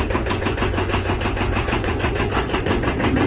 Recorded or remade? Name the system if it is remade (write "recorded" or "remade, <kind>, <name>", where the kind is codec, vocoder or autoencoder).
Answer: remade, vocoder, Vocos